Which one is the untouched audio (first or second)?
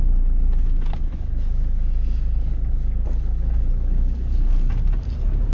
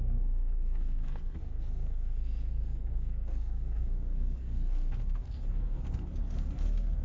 first